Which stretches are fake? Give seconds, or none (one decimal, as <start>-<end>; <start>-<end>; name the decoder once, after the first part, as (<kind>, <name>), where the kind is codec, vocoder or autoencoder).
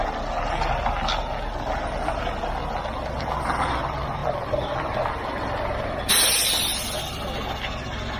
none